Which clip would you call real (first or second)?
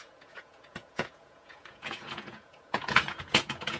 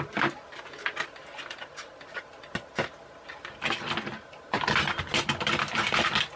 second